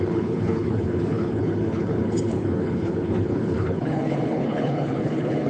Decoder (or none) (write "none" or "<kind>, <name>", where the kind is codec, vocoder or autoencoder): codec, HILCodec